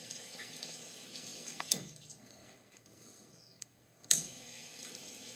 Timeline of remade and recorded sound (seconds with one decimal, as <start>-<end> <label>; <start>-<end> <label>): 0.0-5.4 remade